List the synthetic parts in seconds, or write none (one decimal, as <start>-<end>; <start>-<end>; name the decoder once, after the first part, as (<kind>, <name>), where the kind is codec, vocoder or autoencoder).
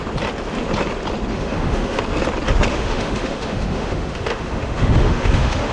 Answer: 1.3-2.0 (autoencoder, DAC-VAE); 2.7-5.7